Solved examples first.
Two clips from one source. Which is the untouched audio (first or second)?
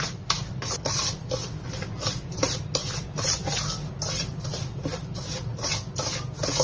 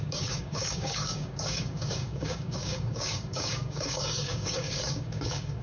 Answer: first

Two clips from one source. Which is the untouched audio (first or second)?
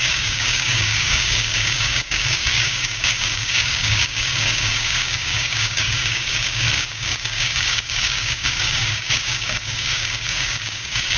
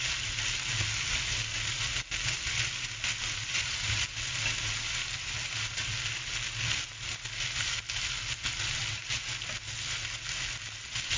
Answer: second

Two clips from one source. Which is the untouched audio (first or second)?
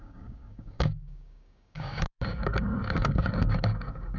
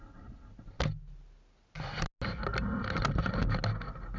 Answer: second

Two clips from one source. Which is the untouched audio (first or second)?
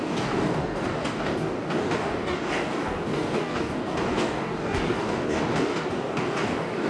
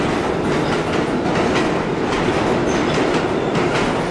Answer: second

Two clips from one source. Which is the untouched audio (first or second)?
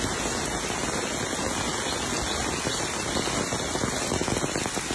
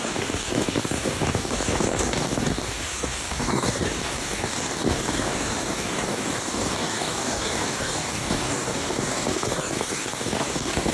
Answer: first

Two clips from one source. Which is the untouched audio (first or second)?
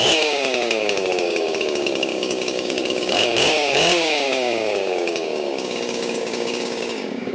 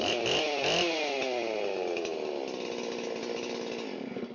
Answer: second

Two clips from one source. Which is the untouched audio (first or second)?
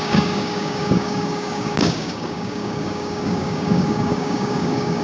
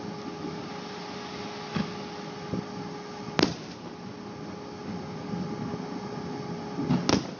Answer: second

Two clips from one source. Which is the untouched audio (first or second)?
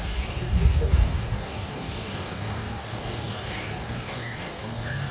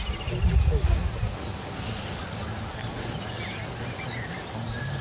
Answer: second